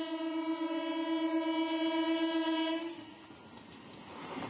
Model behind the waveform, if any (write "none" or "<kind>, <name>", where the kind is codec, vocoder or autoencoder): none